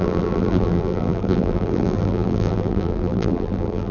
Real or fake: fake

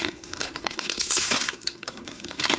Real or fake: fake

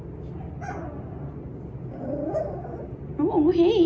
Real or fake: real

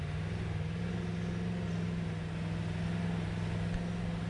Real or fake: real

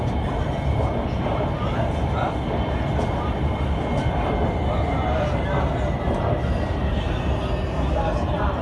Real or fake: real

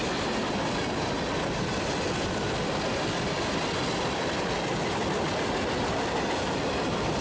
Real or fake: real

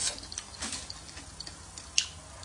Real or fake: real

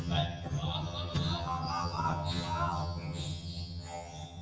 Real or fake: fake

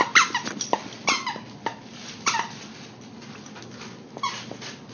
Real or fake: real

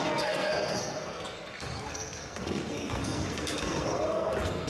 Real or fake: fake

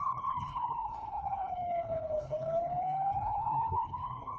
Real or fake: fake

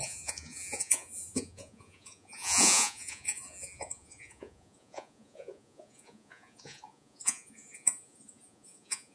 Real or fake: fake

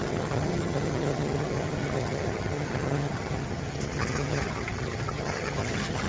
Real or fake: fake